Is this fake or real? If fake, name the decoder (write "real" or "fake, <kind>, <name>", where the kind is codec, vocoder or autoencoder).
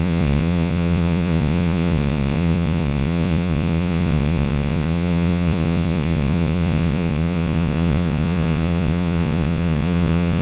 fake, vocoder, Vocos